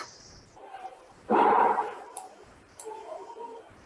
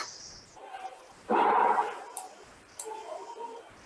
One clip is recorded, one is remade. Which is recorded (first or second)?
second